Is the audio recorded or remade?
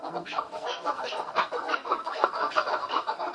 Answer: remade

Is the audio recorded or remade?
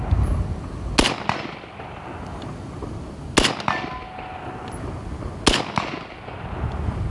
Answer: recorded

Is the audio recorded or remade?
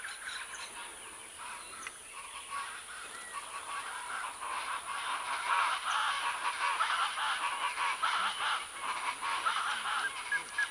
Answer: recorded